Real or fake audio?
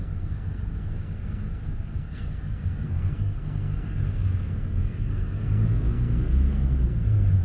fake